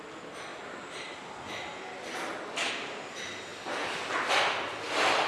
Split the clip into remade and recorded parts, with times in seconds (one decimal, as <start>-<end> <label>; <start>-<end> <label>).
0.0-5.3 recorded